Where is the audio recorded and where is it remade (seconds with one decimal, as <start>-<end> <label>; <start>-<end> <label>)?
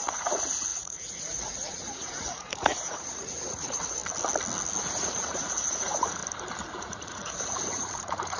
0.0-4.0 remade; 4.0-4.8 recorded; 4.8-6.2 remade; 6.2-6.7 recorded; 6.7-8.4 remade